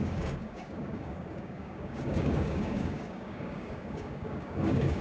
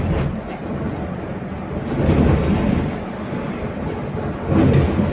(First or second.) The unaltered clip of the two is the second